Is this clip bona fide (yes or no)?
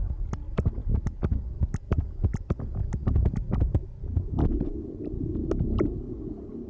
yes